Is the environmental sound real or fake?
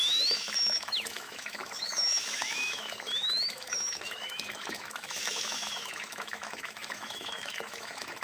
fake